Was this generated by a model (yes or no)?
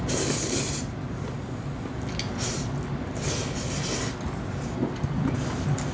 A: no